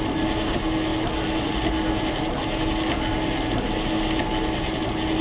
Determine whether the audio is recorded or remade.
recorded